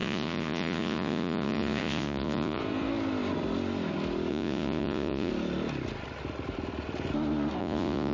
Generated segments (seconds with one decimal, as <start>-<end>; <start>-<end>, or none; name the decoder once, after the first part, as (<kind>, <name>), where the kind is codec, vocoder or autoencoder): 0.0-2.6 (vocoder, Vocos); 4.3-5.3; 7.6-8.1